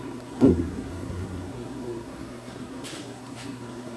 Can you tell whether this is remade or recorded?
remade